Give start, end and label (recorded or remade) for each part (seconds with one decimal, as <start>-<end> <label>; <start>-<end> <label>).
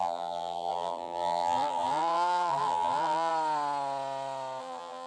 0.0-3.3 remade; 3.3-4.6 recorded; 4.6-5.1 remade